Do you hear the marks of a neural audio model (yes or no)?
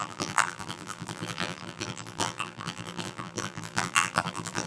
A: yes